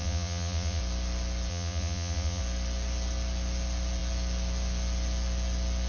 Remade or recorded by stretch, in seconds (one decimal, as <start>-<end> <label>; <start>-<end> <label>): 0.0-0.8 remade; 0.8-1.5 recorded; 1.5-2.4 remade; 2.4-5.9 recorded